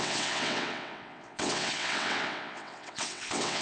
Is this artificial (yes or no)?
yes